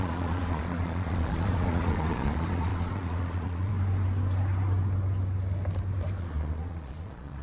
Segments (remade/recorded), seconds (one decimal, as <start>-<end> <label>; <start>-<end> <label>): 0.0-3.7 remade; 3.7-6.2 recorded; 6.2-7.4 remade